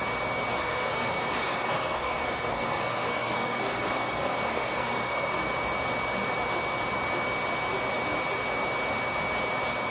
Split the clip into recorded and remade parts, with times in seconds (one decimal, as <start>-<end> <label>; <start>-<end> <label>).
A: 0.0-0.5 recorded; 0.5-5.4 remade; 5.4-9.9 recorded